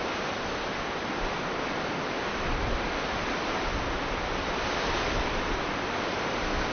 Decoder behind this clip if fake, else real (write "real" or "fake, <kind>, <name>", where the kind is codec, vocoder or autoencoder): real